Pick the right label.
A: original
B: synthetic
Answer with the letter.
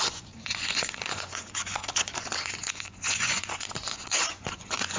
B